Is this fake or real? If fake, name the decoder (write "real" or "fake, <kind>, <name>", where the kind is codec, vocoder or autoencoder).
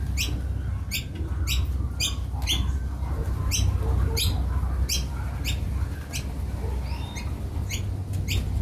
real